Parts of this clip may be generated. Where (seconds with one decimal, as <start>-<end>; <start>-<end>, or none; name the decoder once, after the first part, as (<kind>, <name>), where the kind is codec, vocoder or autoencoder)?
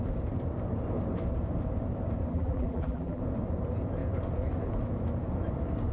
2.3-3.2 (vocoder, BigVGAN v2)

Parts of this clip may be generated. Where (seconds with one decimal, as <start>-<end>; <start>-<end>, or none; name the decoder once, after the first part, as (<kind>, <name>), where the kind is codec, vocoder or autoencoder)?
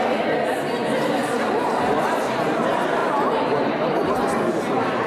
3.0-5.1 (vocoder, BigVGAN v2)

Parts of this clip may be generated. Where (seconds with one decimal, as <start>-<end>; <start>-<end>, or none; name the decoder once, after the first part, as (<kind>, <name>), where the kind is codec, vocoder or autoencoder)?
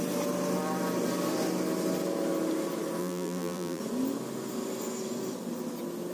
3.0-3.8 (vocoder, BigVGAN v2)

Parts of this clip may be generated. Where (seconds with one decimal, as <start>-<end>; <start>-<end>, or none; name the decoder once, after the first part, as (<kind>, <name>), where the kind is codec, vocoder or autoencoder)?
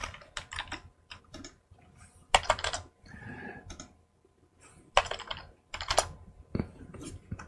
1.2-2.2 (vocoder, BigVGAN v2); 6.7-7.5